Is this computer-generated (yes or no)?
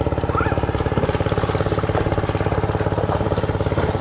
no